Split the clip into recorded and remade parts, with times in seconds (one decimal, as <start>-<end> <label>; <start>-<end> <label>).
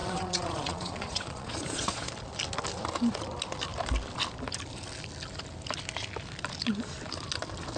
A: 0.0-2.1 remade; 2.1-7.8 recorded